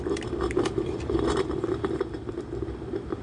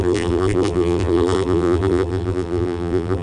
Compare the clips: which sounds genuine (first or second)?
first